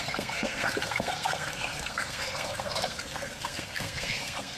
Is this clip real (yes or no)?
no